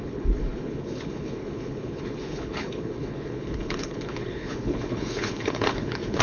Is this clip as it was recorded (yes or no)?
no